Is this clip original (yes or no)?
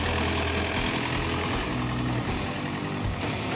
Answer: yes